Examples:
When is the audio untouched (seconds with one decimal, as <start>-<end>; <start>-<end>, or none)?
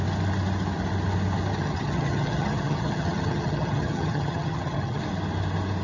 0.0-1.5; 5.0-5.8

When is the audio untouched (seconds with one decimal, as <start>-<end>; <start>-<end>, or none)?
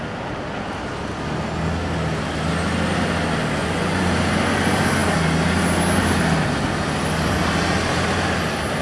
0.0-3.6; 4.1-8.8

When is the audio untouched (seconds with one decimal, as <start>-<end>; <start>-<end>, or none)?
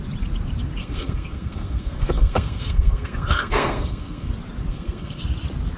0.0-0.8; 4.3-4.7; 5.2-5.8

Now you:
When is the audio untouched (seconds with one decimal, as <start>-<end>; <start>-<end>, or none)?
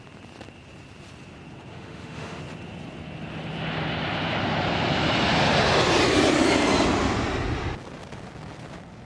0.0-1.7; 2.4-9.1